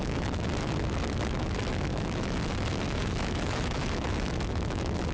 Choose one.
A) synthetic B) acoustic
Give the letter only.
A